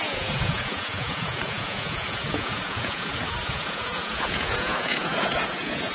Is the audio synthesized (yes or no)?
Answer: yes